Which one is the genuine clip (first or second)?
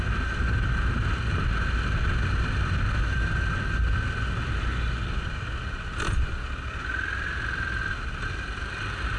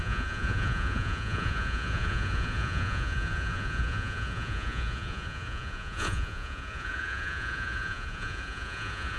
first